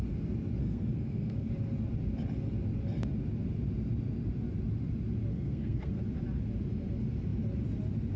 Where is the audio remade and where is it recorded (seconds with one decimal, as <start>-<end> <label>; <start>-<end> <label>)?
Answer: 0.0-0.6 recorded; 0.6-1.5 remade; 1.5-5.3 recorded; 5.3-6.0 remade; 6.0-8.2 recorded